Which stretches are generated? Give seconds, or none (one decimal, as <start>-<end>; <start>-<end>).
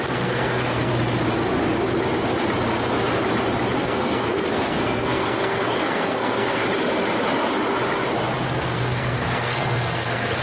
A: 0.0-0.9; 3.8-6.6; 8.4-10.4